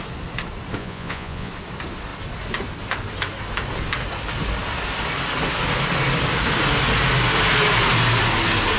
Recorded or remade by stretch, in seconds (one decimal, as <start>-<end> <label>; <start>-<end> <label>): 0.0-0.8 recorded; 0.8-1.5 remade; 1.5-8.8 recorded